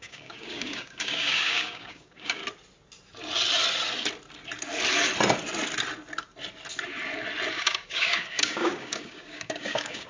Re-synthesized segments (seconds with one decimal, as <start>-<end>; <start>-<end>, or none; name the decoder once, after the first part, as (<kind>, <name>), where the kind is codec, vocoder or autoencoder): 0.0-2.4 (codec, DAC); 7.5-10.1